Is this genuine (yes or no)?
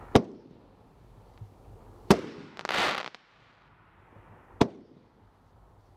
yes